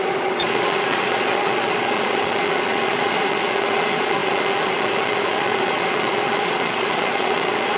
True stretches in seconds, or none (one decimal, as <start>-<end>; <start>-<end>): none